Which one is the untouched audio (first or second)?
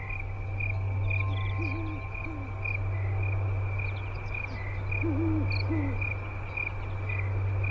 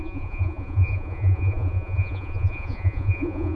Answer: first